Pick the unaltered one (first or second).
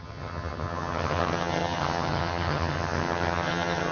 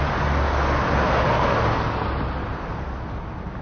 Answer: second